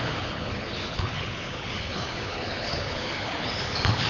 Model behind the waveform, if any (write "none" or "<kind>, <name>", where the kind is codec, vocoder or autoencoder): codec, HILCodec